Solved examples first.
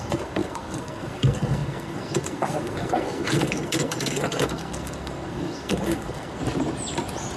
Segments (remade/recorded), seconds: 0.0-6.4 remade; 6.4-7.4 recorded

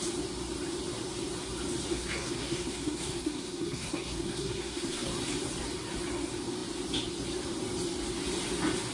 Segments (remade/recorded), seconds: 0.0-1.9 recorded; 1.9-5.1 remade; 5.1-8.9 recorded